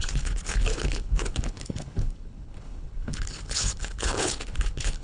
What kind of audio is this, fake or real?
fake